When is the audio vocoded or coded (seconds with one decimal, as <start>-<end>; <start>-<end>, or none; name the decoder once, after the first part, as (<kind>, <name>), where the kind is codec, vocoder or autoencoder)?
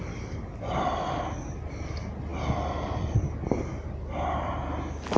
none